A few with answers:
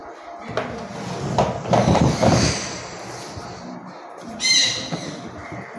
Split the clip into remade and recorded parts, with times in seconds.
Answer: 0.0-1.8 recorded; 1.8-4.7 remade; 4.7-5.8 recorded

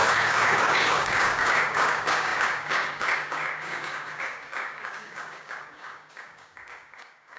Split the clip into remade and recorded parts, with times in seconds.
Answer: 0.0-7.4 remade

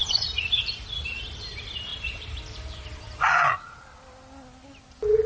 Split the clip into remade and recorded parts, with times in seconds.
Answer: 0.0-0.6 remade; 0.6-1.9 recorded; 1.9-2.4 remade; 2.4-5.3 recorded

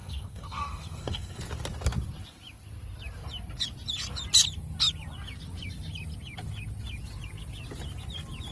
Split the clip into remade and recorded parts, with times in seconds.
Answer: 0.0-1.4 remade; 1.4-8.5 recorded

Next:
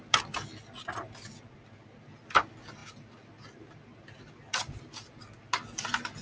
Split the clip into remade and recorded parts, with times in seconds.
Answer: 0.0-6.2 recorded

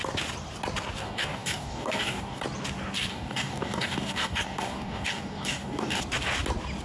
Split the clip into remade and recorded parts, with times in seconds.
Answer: 0.0-1.0 recorded; 1.0-2.4 remade; 2.4-3.1 recorded; 3.1-6.0 remade; 6.0-6.8 recorded